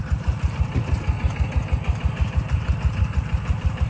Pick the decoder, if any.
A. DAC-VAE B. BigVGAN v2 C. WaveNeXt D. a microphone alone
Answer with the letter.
D